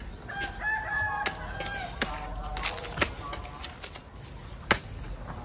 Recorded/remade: recorded